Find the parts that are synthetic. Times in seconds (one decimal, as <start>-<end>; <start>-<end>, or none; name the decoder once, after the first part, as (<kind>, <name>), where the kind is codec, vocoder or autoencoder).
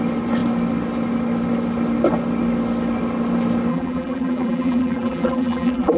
3.7-6.0 (vocoder, BigVGAN v2)